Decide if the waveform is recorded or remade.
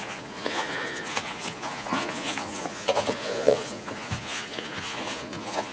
remade